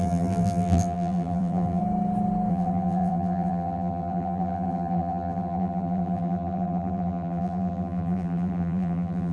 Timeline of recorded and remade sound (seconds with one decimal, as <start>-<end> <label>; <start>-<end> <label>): 0.0-1.8 remade; 1.8-2.5 recorded; 2.5-9.3 remade